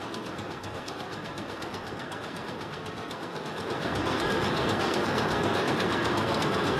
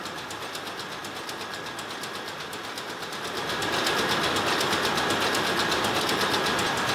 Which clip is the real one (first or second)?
second